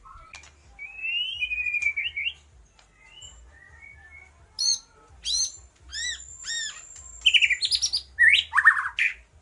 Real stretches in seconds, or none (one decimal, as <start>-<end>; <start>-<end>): 0.0-9.4

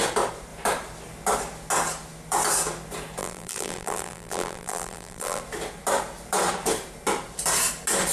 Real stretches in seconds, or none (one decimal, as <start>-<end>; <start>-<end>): 0.0-3.2; 5.4-8.1